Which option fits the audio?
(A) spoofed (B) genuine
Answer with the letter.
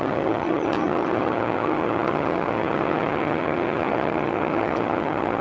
A